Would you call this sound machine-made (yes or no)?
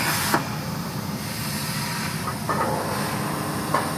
no